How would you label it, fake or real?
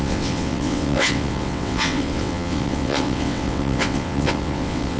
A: fake